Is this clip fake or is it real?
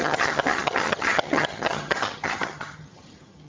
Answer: fake